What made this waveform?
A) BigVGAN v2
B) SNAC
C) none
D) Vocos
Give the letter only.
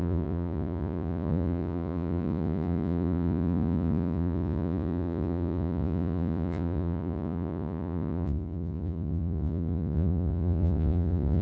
D